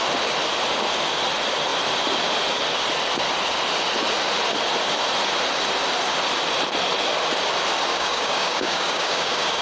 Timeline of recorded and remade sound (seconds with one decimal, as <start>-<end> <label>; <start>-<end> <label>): 0.0-7.9 recorded; 7.9-9.6 remade